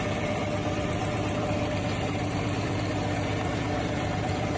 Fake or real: fake